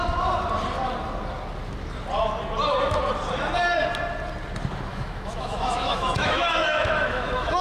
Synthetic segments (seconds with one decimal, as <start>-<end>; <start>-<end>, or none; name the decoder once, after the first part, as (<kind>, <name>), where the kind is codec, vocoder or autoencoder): 4.9-7.6 (autoencoder, DAC-VAE)